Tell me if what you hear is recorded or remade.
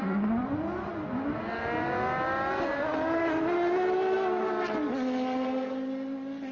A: recorded